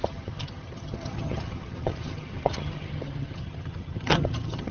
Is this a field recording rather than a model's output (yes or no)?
no